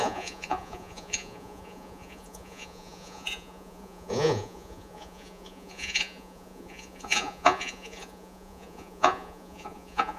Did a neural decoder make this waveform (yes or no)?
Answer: yes